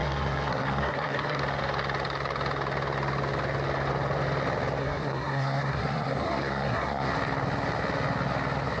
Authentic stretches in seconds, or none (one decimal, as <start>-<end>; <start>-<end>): 1.4-4.8; 7.1-8.8